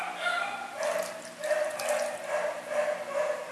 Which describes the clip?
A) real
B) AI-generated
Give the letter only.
A